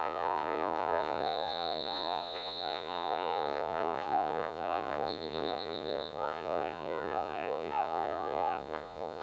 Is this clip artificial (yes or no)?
yes